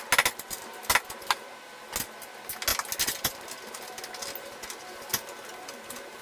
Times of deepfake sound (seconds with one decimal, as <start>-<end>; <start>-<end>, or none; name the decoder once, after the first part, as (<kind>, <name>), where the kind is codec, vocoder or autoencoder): none